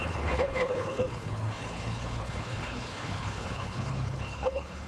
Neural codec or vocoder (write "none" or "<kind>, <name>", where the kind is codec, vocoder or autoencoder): codec, HILCodec